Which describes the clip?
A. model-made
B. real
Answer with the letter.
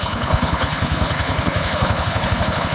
A